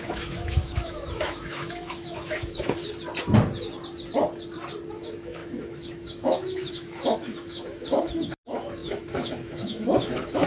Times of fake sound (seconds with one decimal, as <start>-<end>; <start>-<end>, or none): 0.0-2.8; 4.9-10.5